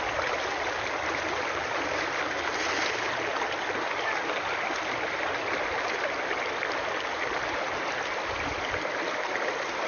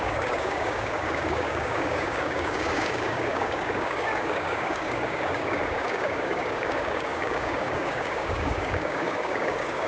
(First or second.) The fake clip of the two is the second